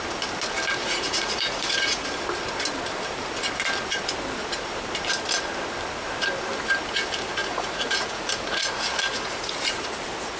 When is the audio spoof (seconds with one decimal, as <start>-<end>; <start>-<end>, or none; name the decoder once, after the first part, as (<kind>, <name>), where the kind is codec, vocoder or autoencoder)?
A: 0.8-2.0 (vocoder, Vocos); 7.4-9.5

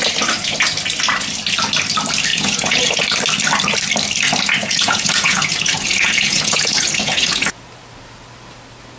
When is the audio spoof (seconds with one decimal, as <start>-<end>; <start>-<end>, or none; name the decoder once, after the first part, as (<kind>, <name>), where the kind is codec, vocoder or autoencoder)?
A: 2.3-3.0 (vocoder, Vocos); 4.6-7.6

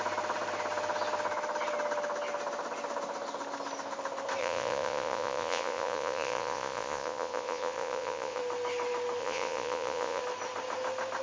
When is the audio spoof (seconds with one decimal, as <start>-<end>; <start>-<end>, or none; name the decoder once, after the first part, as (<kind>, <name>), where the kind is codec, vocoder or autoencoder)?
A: 4.4-8.4 (vocoder, Vocos); 9.2-10.2

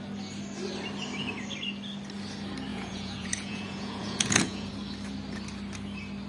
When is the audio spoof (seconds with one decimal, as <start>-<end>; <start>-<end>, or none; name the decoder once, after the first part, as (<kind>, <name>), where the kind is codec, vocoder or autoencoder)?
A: 2.7-4.7 (vocoder, Vocos)

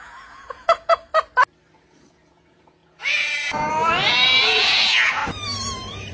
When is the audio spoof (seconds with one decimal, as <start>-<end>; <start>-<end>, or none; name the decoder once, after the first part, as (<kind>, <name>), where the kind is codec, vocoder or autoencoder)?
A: 0.0-1.1 (vocoder, Vocos); 2.1-5.2

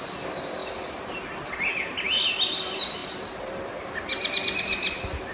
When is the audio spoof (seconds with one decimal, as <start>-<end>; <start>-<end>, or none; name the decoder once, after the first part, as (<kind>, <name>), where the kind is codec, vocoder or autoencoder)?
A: none

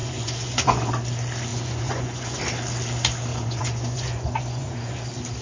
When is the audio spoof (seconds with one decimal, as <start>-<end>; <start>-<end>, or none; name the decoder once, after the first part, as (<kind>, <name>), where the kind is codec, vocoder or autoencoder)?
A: 0.0-0.9 (vocoder, Vocos); 1.5-2.4; 3.3-5.0